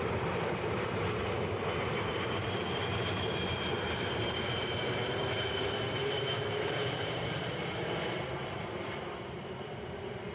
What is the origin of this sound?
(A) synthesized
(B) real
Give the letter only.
A